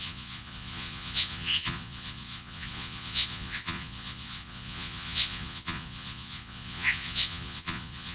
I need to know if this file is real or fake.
fake